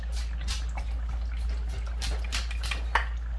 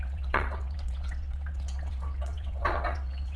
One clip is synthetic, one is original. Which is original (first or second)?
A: first